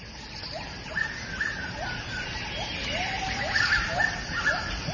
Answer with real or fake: real